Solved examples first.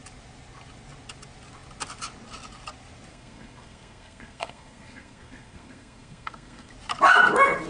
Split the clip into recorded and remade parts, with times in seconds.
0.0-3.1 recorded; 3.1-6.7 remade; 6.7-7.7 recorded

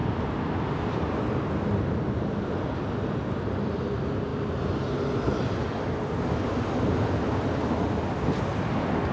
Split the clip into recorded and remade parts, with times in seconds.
0.0-9.1 recorded

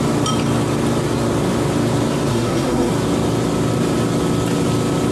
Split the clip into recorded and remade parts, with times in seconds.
0.0-2.3 recorded; 2.3-2.9 remade; 2.9-5.1 recorded

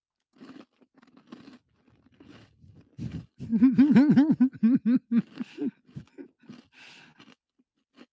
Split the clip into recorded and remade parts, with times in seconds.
0.0-8.1 recorded

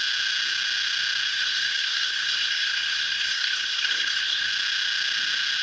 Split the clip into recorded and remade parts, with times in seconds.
0.0-1.3 recorded; 1.3-4.5 remade; 4.5-5.6 recorded